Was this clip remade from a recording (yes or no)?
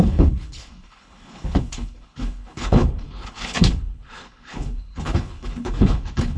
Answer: yes